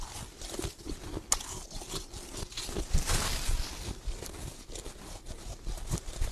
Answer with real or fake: fake